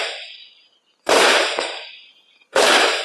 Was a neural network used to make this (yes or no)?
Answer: yes